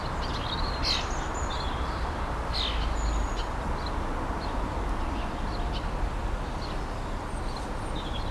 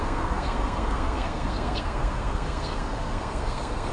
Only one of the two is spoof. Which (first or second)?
second